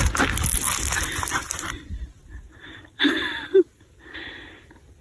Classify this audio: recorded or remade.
recorded